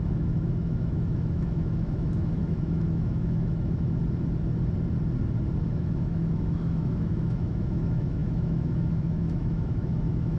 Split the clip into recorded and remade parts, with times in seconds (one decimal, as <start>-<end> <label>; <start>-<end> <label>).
0.0-4.0 remade; 4.0-5.7 recorded; 5.7-10.4 remade